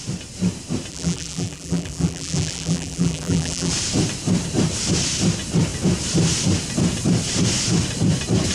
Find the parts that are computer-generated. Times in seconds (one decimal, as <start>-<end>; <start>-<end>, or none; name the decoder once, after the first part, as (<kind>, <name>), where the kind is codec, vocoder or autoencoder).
0.9-3.7 (vocoder, BigVGAN v2)